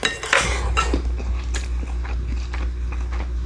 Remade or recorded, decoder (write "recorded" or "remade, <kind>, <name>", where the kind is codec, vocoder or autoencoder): recorded